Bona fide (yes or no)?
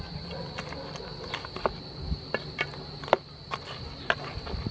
yes